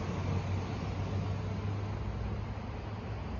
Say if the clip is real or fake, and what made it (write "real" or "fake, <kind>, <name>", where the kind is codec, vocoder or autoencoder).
real